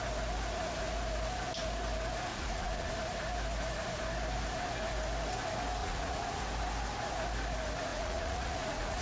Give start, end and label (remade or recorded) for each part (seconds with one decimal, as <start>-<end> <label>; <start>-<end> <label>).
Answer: 0.0-2.3 recorded; 2.3-2.9 remade; 2.9-5.8 recorded; 5.8-6.4 remade; 6.4-7.9 recorded; 7.9-9.0 remade